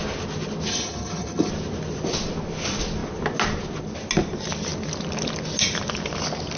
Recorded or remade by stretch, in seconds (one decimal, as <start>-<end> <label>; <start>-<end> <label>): 0.0-0.7 recorded; 0.7-1.5 remade; 1.5-6.6 recorded